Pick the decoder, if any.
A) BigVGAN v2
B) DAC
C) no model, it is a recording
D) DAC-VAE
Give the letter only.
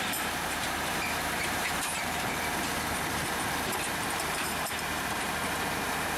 A